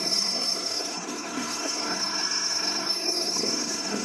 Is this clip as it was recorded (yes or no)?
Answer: no